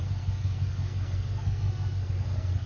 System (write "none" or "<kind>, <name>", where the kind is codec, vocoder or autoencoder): codec, SNAC